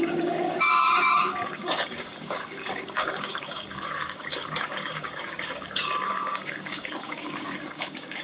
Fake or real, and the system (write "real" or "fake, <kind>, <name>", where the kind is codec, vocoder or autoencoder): fake, codec, DAC